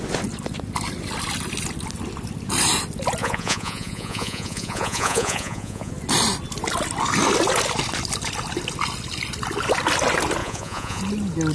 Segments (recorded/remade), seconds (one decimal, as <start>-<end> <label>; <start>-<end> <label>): 0.0-3.2 recorded; 3.2-5.9 remade; 5.9-10.4 recorded; 10.4-11.0 remade; 11.0-11.5 recorded